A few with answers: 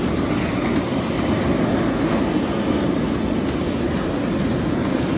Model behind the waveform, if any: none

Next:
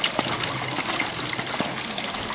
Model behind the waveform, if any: none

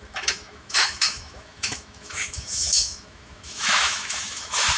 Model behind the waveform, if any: autoencoder, DAC-VAE